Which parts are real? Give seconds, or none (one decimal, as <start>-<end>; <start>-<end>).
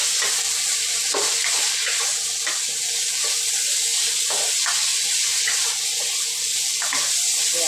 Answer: 0.0-7.7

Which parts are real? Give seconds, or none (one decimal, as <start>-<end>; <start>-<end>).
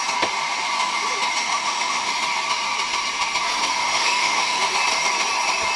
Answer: 0.0-1.4; 2.1-3.8; 4.6-5.8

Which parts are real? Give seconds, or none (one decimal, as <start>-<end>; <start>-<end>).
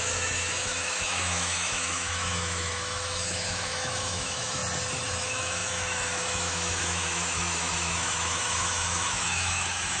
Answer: 4.6-5.1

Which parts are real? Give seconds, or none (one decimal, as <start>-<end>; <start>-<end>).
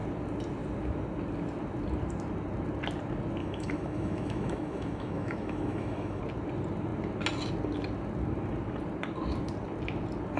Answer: 0.0-3.4; 6.2-10.4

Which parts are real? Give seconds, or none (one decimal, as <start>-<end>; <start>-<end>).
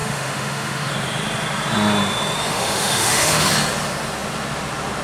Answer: 0.9-2.4; 3.5-5.0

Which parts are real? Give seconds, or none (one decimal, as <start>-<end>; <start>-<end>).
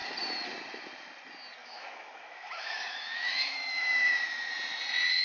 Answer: 0.0-1.6; 4.5-5.2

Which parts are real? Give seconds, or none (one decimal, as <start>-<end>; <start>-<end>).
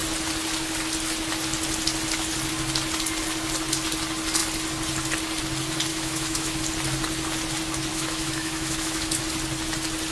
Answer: 0.0-5.9; 6.6-7.9; 9.2-10.1